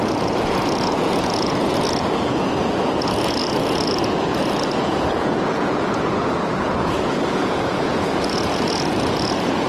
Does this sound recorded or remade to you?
remade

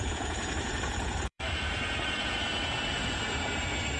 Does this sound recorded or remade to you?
remade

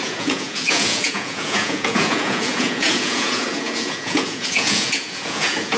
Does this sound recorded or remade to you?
remade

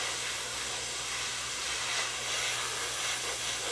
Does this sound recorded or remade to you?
recorded